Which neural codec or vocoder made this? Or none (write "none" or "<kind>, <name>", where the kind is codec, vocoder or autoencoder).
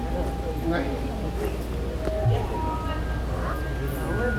none